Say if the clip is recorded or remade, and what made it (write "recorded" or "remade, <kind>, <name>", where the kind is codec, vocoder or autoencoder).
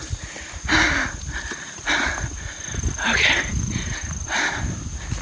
recorded